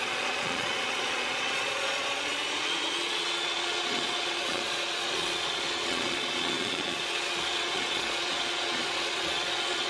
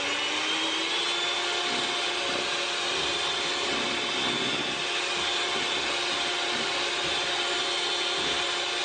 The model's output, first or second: first